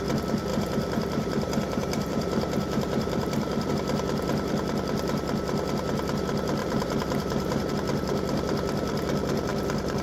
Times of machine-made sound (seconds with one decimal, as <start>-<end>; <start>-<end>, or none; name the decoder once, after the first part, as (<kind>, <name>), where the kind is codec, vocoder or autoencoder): 0.5-3.7 (vocoder, BigVGAN v2); 6.6-7.7